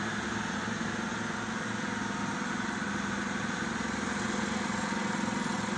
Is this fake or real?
real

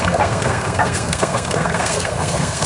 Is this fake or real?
fake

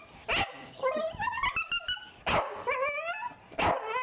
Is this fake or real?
real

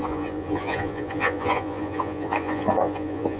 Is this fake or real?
fake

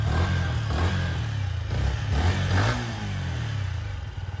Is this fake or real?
real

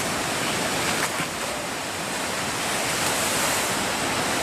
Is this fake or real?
real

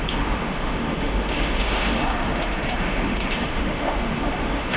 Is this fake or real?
fake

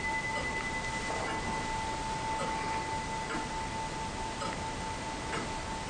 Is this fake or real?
real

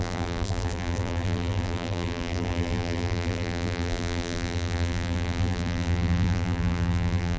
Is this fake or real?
fake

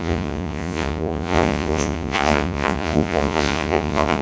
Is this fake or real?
fake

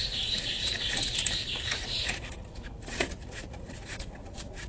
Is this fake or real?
fake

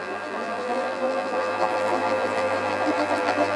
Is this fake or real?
fake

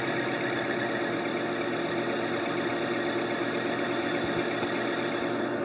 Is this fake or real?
real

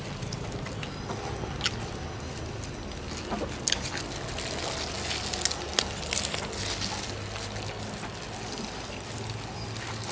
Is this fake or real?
real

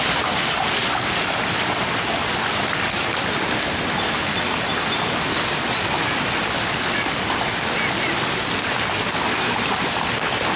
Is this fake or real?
real